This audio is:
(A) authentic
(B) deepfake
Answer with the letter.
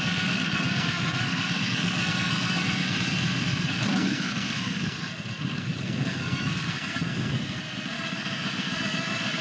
B